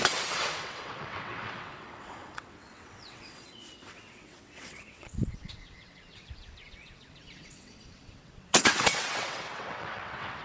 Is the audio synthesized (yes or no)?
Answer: yes